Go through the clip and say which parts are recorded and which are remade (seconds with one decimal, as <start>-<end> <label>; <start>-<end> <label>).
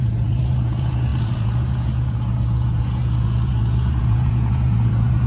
0.0-5.3 remade